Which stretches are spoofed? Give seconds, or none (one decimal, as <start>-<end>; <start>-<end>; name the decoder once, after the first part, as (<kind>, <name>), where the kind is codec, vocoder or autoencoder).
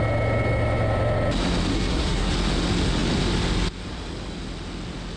1.7-2.3 (codec, SNAC)